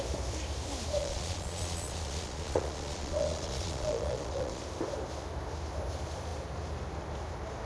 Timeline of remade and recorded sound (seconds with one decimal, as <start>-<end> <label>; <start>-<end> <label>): 0.0-1.0 recorded; 1.0-4.6 remade; 4.6-7.7 recorded